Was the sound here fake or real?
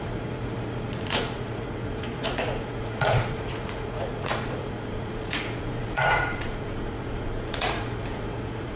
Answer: fake